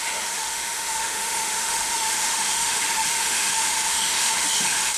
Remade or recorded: remade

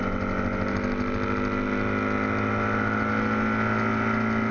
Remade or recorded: recorded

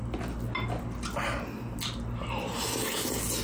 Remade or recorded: recorded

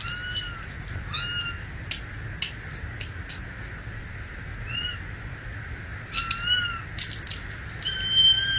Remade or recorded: recorded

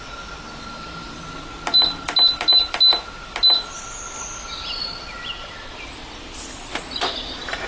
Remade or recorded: recorded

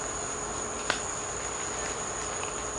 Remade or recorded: recorded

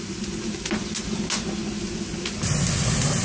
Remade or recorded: recorded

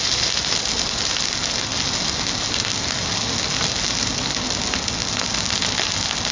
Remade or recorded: recorded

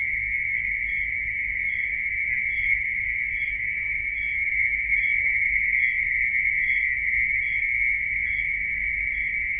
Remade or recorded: recorded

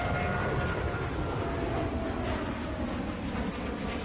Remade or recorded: recorded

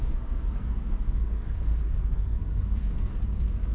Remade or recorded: remade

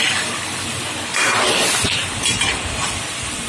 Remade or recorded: recorded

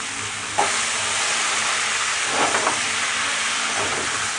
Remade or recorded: recorded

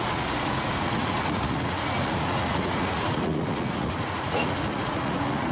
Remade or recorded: remade